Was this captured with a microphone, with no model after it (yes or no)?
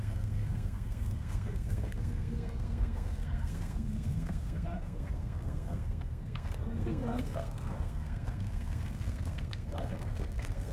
no